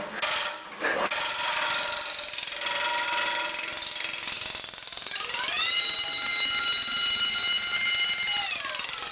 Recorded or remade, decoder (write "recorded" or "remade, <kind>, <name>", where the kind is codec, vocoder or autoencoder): recorded